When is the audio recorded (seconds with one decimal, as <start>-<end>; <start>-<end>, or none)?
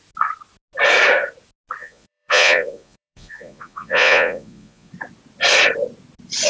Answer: 0.0-1.8; 4.9-6.5